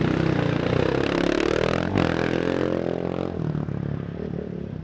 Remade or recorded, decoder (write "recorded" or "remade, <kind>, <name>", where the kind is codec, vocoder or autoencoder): recorded